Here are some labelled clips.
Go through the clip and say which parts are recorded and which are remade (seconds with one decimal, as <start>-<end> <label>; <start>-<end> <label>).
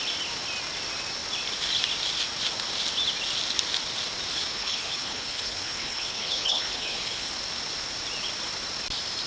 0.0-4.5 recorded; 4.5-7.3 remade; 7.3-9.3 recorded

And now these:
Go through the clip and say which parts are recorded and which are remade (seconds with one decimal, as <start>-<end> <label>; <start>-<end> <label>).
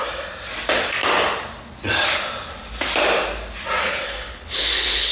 0.0-3.8 recorded; 3.8-5.1 remade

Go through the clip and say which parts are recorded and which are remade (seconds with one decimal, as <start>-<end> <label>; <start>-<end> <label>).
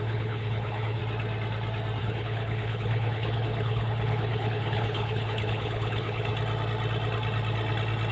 0.0-1.0 remade; 1.0-2.0 recorded; 2.0-6.3 remade; 6.3-8.1 recorded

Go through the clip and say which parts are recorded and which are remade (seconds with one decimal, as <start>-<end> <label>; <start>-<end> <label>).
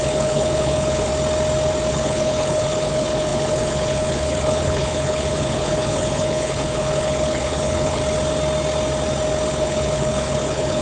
0.0-1.1 remade; 1.1-1.9 recorded; 1.9-8.0 remade; 8.0-9.5 recorded; 9.5-10.8 remade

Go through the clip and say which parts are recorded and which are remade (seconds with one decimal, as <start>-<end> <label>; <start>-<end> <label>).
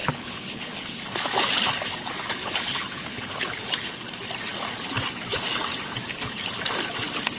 0.0-1.0 remade; 1.0-2.4 recorded; 2.4-3.9 remade; 3.9-7.4 recorded